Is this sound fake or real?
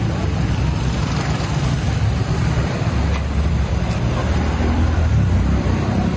fake